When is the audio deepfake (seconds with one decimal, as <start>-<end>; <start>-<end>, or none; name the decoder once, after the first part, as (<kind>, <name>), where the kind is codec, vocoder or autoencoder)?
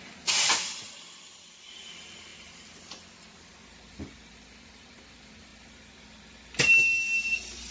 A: none